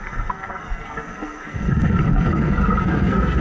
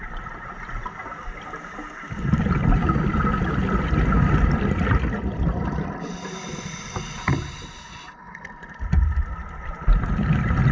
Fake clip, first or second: first